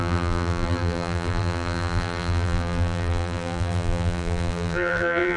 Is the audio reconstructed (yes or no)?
yes